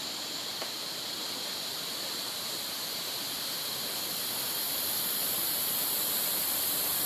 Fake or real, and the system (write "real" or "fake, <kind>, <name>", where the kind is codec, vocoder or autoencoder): fake, vocoder, BigVGAN v2